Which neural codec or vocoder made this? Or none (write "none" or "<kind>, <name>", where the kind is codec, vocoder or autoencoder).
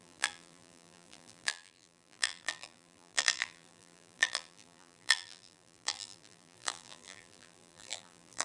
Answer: vocoder, BigVGAN v2